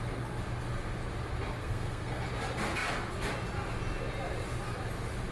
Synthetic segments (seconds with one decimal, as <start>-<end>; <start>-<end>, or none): 1.6-2.2